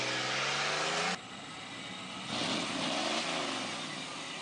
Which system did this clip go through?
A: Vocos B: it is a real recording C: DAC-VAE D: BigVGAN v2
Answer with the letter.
B